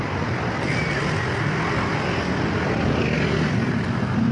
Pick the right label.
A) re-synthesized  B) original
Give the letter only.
B